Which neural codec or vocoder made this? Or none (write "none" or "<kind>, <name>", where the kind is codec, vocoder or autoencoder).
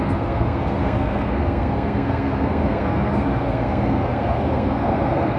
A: codec, SNAC